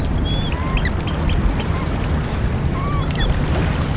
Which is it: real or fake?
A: real